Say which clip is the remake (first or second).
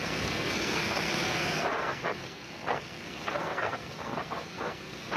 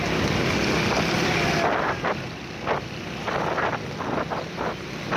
first